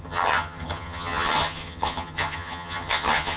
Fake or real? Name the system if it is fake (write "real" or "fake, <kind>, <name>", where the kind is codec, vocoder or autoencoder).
fake, vocoder, HiFi-GAN